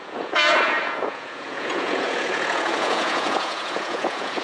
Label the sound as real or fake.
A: fake